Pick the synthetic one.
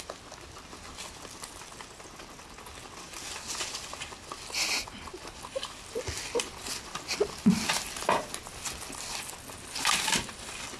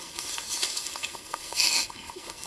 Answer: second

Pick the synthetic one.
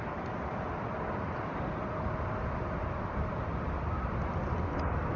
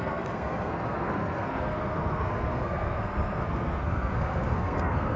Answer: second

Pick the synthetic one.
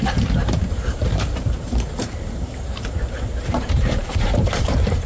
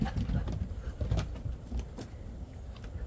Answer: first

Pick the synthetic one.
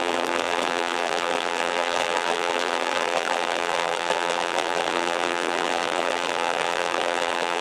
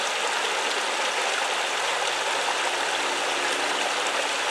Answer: first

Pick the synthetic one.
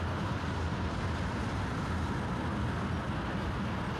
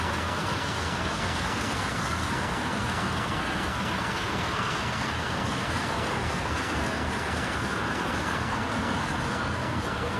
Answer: second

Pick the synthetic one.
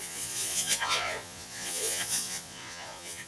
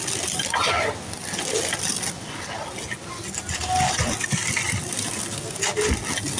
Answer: first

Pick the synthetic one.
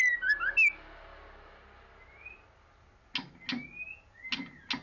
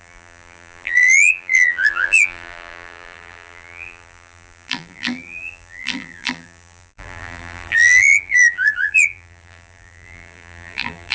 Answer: second